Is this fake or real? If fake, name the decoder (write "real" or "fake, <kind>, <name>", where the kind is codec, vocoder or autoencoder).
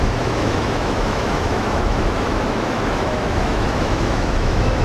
fake, autoencoder, DAC-VAE